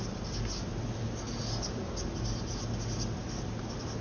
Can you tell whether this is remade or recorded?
recorded